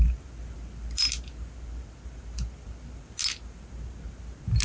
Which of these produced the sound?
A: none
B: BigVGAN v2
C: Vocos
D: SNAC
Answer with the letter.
A